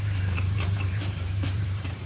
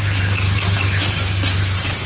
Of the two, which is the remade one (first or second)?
first